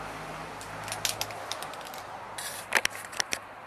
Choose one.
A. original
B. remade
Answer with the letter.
A